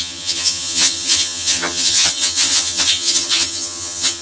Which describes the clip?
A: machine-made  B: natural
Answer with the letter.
A